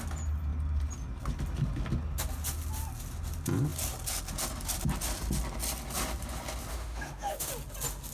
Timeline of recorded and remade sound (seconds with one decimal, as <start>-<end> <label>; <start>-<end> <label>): 0.0-6.7 recorded; 6.7-7.5 remade; 7.5-8.1 recorded